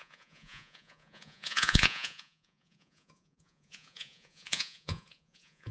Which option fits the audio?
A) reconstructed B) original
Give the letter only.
A